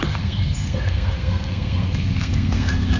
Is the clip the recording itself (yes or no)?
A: no